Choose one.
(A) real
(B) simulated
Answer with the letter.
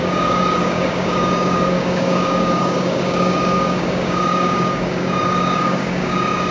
B